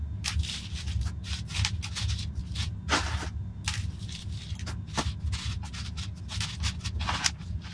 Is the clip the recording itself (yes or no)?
yes